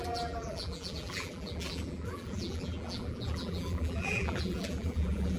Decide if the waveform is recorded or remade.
remade